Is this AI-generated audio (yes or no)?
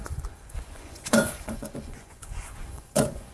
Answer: yes